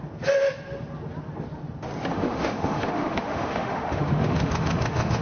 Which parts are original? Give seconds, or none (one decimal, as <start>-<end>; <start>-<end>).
0.0-2.1